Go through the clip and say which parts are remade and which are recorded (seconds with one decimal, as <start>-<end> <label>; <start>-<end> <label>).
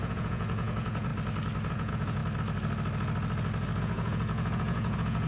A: 0.0-1.1 remade; 1.1-1.7 recorded; 1.7-2.2 remade; 2.2-3.8 recorded; 3.8-5.3 remade